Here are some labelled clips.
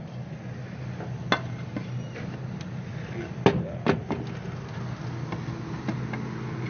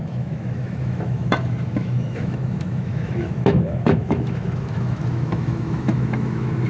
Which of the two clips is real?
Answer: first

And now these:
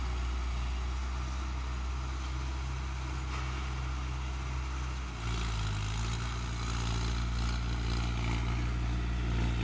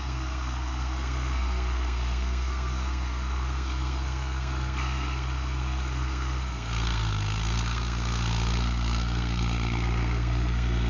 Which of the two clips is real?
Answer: first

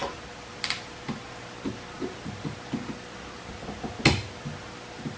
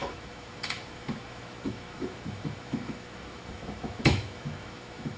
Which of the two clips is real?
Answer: first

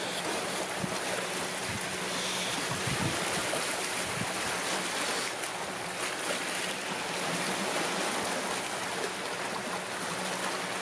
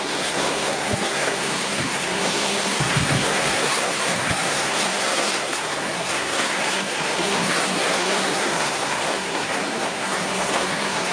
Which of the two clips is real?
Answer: first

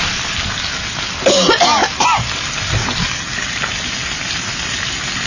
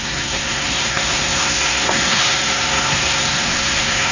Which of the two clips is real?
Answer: first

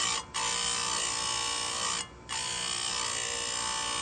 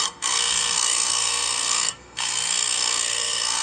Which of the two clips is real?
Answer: first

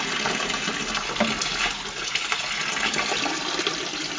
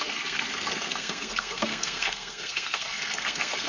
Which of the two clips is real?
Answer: first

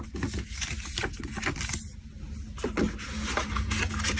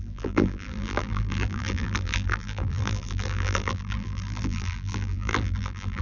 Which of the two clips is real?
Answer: first